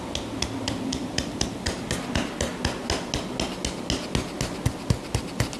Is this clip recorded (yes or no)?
yes